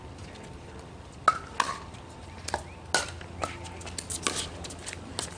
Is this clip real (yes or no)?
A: yes